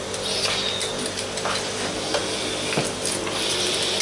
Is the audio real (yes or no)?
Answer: yes